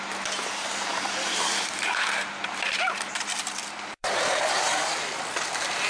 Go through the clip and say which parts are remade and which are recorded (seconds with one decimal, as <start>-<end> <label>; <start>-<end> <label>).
0.0-0.9 recorded; 0.9-4.4 remade; 4.4-5.9 recorded